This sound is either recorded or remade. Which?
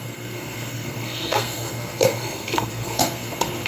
remade